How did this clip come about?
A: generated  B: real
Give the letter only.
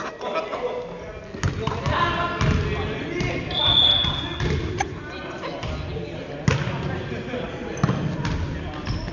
B